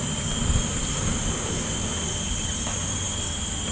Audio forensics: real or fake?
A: fake